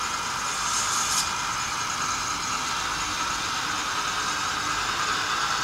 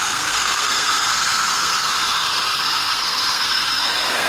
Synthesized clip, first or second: second